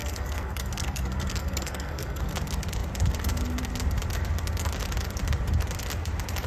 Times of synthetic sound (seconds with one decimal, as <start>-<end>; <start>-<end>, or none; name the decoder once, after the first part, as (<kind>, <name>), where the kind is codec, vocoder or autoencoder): 0.0-2.3 (codec, SNAC)